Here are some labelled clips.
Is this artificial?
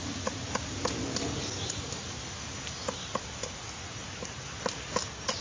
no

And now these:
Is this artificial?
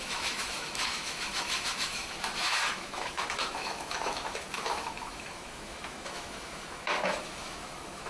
yes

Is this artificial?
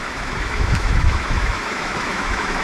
yes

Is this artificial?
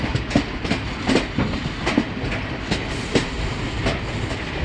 no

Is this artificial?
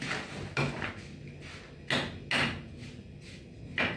no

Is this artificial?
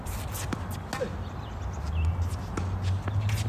no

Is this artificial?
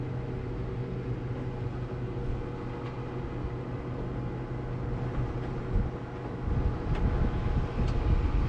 no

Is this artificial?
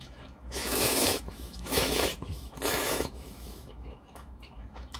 yes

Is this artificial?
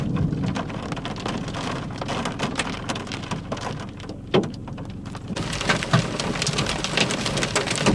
no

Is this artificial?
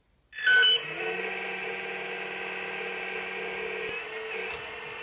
no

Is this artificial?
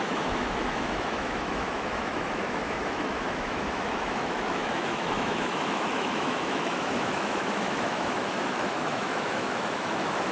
yes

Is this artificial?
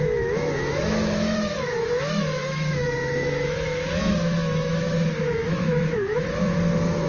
yes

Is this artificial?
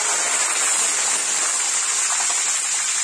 no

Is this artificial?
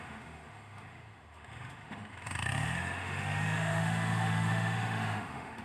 yes